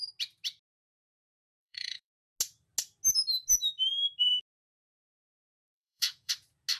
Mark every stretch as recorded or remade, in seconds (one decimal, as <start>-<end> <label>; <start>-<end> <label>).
0.0-1.4 recorded; 1.4-2.1 remade; 2.1-5.6 recorded; 5.6-6.3 remade; 6.3-6.8 recorded